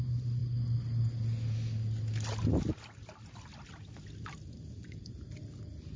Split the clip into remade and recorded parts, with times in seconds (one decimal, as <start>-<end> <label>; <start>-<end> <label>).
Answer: 0.0-4.8 recorded; 4.8-5.4 remade; 5.4-6.0 recorded